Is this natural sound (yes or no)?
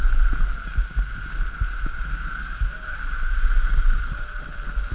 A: yes